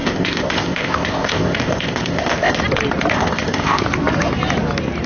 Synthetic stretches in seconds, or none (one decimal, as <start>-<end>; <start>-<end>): 0.0-2.6; 3.1-3.8